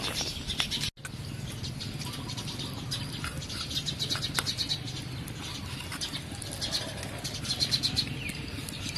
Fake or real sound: real